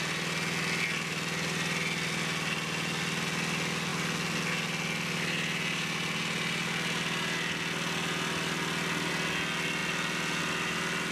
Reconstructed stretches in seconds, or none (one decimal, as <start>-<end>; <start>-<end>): none

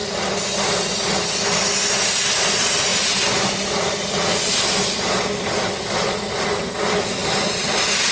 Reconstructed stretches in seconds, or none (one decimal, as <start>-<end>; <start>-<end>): none

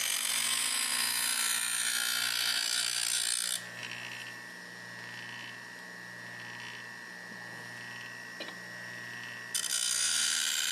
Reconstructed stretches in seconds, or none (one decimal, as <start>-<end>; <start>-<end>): none

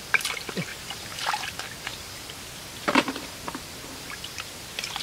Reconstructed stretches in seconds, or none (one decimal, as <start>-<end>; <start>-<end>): 0.7-1.3; 1.9-5.0